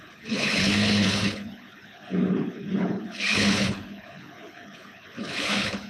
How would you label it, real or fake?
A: fake